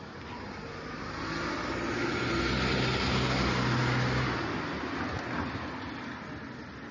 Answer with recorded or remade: recorded